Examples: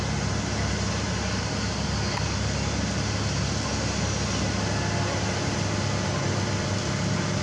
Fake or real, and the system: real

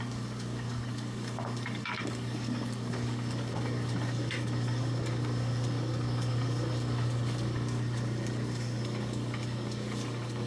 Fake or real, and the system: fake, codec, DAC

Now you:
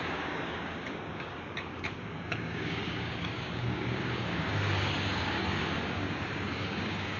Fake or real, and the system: fake, codec, DAC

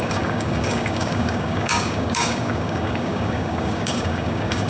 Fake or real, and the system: fake, codec, DAC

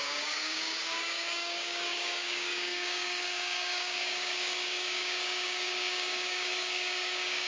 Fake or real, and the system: fake, codec, DAC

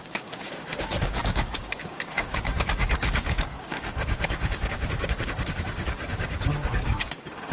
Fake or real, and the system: fake, codec, DAC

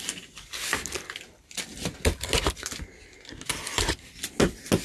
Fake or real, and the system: real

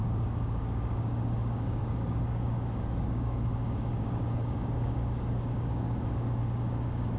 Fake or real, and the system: fake, codec, DAC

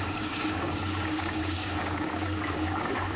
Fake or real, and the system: fake, codec, DAC